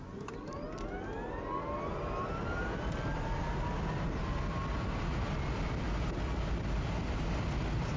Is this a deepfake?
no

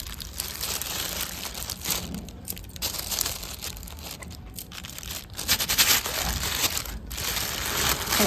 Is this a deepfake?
yes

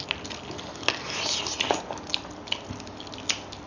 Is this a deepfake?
no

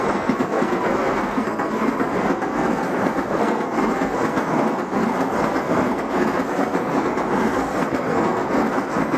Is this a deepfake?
yes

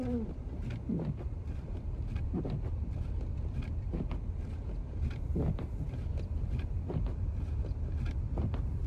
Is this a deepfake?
no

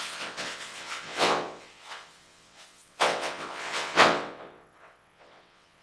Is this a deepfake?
yes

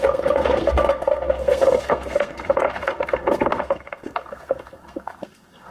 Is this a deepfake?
yes